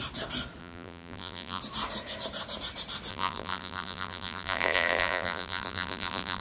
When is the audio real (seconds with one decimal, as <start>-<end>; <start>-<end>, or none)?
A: 0.0-0.6; 1.6-3.1